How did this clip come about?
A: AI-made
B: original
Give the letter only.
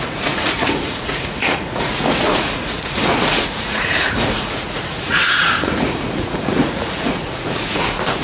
A